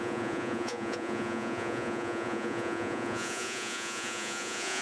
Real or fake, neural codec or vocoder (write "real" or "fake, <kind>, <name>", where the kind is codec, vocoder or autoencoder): fake, vocoder, Vocos